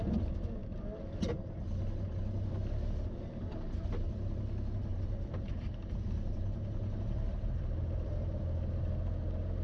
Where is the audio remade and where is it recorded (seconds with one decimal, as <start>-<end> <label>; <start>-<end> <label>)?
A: 0.0-4.9 recorded; 4.9-8.4 remade; 8.4-9.6 recorded